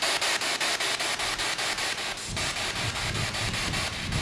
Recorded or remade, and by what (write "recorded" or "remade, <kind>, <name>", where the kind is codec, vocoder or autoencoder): recorded